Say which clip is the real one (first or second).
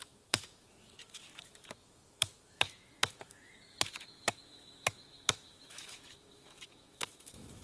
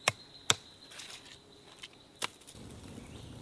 second